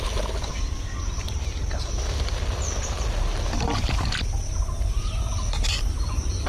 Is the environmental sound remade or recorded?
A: recorded